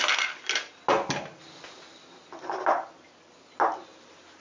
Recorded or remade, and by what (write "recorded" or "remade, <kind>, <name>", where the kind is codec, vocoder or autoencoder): recorded